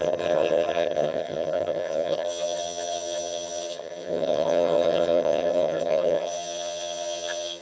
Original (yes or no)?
no